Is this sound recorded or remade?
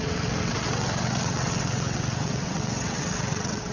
remade